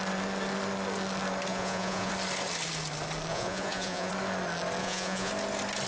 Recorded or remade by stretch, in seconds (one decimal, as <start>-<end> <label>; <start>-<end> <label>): 0.0-1.5 recorded; 1.5-2.1 remade; 2.1-3.3 recorded; 3.3-4.1 remade; 4.1-4.8 recorded; 4.8-5.3 remade; 5.3-5.9 recorded